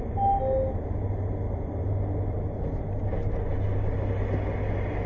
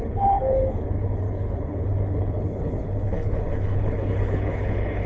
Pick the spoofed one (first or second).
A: second